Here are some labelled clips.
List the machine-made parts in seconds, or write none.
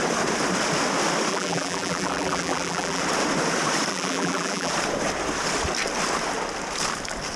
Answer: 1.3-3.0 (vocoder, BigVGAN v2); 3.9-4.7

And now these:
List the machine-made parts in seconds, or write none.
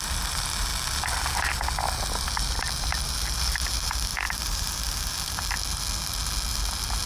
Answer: none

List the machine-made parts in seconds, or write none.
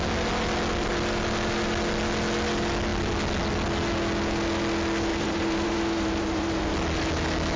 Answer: 5.1-6.7 (vocoder, BigVGAN v2)